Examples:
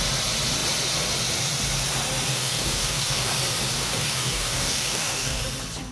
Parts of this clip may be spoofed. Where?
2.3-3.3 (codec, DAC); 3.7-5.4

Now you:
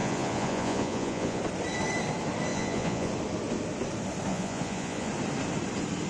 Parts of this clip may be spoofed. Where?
0.0-1.4 (vocoder, Vocos); 2.5-3.1; 4.3-5.1

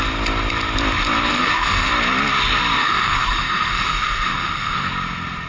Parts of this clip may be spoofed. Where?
1.3-1.9 (autoencoder, DAC-VAE); 2.8-4.9

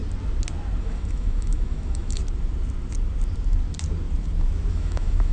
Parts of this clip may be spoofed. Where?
0.8-2.2 (autoencoder, DAC-VAE); 4.7-5.3

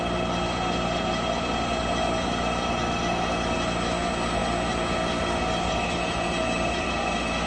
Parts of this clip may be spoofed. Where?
none